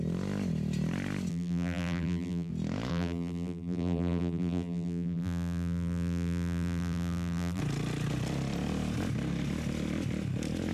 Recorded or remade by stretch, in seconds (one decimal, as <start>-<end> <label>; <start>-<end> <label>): 0.0-1.3 recorded; 1.3-2.5 remade; 2.5-2.9 recorded; 2.9-7.6 remade; 7.6-10.7 recorded